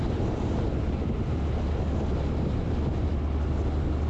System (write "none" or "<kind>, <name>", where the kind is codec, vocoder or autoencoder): none